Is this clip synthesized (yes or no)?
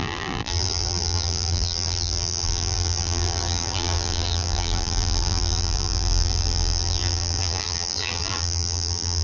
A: yes